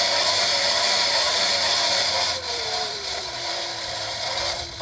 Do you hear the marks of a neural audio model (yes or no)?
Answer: yes